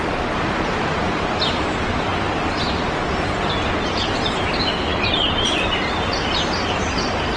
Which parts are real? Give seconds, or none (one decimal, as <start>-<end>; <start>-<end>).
2.1-4.4